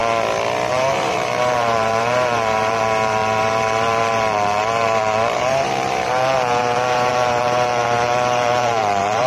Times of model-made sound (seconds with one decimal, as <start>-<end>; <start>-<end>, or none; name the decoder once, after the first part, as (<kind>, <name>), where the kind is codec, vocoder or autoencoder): 0.7-9.3 (vocoder, BigVGAN v2)